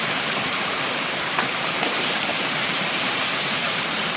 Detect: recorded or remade remade